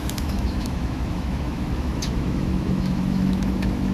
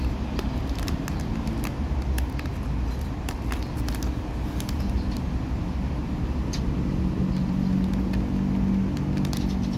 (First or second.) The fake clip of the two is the first